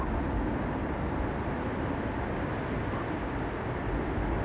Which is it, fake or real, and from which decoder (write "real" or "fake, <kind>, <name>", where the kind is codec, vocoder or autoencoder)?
real